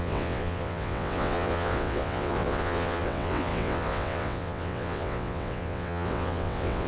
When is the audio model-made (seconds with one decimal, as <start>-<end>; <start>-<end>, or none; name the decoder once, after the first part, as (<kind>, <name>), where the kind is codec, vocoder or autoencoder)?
0.0-6.9 (vocoder, WaveNeXt)